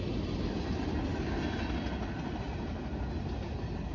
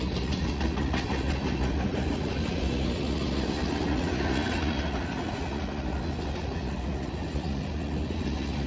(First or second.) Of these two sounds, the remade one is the second